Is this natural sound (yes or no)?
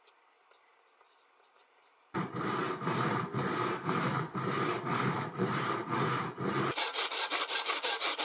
no